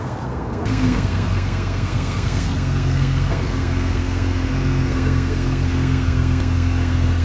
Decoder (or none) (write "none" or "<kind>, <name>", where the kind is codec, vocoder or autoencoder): codec, SNAC